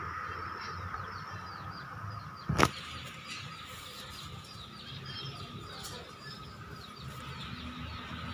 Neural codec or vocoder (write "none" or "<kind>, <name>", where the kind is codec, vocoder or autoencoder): none